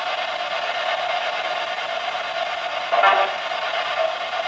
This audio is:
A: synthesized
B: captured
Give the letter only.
B